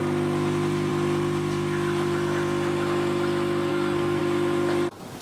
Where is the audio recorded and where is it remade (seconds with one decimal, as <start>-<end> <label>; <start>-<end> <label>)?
0.0-3.7 recorded; 3.7-4.2 remade; 4.2-5.2 recorded